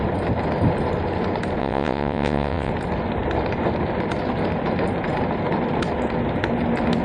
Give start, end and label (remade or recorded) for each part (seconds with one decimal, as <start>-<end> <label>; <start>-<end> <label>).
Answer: 0.0-1.6 recorded; 1.6-2.7 remade; 2.7-7.0 recorded